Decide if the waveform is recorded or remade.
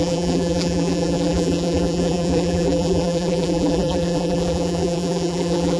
remade